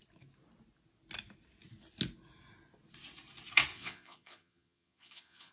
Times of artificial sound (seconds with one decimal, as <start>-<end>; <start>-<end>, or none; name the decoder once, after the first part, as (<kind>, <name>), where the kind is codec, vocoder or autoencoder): 3.7-5.5 (vocoder, Vocos)